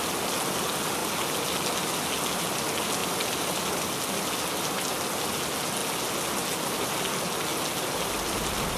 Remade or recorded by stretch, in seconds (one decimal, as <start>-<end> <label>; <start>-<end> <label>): 0.0-3.0 recorded; 3.0-3.8 remade; 3.8-8.8 recorded